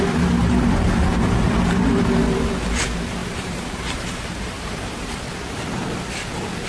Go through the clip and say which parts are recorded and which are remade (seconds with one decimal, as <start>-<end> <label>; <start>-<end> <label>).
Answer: 0.0-0.4 recorded; 0.4-1.5 remade; 1.5-3.2 recorded; 3.2-5.2 remade; 5.2-6.7 recorded